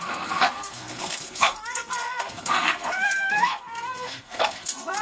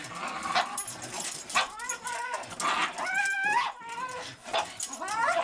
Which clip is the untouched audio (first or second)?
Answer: second